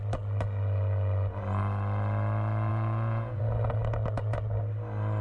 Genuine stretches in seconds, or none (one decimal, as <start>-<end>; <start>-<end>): 0.0-2.7; 3.4-5.2